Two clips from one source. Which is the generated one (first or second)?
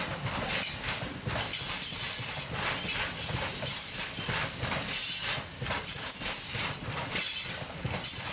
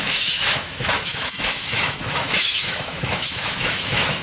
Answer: second